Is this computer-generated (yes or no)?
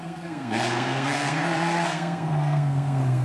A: yes